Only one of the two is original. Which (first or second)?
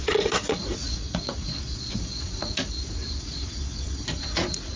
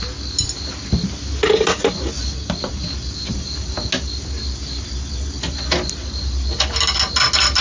second